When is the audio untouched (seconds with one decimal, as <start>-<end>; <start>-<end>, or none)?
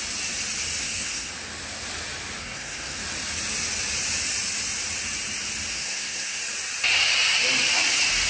0.0-0.8; 1.3-2.4; 3.0-5.7; 6.4-8.3